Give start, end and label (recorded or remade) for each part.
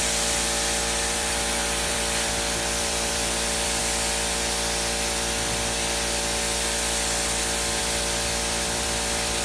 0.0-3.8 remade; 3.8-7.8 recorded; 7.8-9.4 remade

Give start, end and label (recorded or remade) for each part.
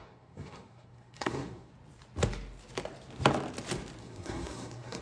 0.0-1.7 remade; 1.7-4.0 recorded; 4.0-5.0 remade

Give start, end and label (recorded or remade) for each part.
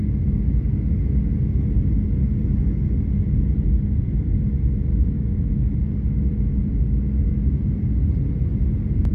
0.0-4.9 recorded; 4.9-5.9 remade; 5.9-9.1 recorded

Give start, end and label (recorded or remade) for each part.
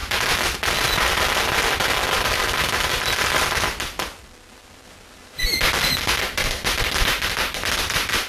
0.0-3.0 recorded; 3.0-8.3 remade